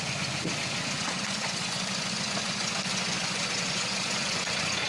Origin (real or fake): fake